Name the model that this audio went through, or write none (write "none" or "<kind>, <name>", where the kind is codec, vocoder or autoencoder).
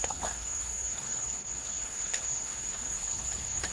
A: codec, HILCodec